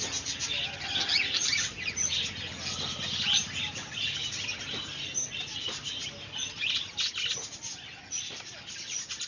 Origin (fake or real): real